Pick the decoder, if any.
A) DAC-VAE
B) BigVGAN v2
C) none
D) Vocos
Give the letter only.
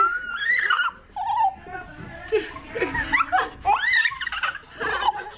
C